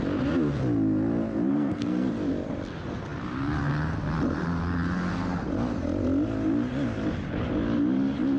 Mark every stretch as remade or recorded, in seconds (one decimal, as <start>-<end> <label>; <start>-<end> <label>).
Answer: 0.0-1.5 recorded; 1.5-2.1 remade; 2.1-8.4 recorded